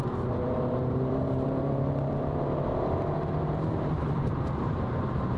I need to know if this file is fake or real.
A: fake